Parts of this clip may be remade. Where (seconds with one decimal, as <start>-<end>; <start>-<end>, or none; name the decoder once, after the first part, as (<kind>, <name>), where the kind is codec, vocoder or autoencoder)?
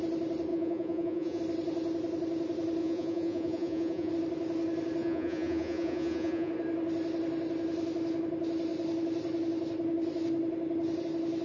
0.5-1.4 (vocoder, Vocos); 2.8-4.1; 5.0-6.5